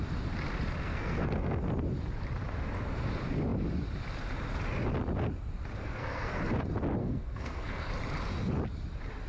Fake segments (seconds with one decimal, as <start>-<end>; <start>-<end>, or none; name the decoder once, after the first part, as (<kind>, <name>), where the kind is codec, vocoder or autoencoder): 0.8-1.6 (codec, SNAC); 5.8-6.4; 7.0-7.9